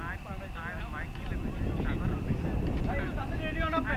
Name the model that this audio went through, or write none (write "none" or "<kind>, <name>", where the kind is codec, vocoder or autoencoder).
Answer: none